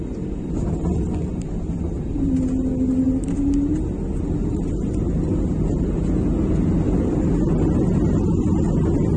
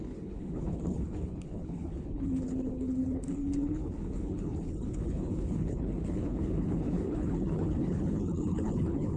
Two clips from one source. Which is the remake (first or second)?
second